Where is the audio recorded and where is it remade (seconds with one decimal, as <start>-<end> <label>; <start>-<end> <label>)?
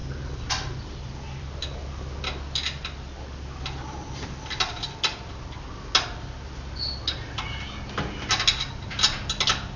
0.0-9.8 recorded